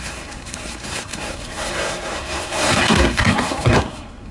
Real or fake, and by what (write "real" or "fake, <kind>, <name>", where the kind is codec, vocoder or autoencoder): fake, codec, SNAC